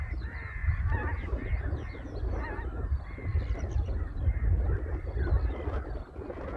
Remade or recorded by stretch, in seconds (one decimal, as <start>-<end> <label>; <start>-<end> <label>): 0.0-6.6 recorded